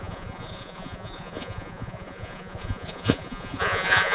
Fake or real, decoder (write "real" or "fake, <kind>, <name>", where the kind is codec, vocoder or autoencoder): fake, vocoder, Vocos